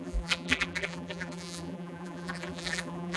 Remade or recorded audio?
remade